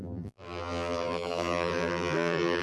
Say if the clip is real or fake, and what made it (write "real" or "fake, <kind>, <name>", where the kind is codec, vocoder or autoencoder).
fake, vocoder, BigVGAN v2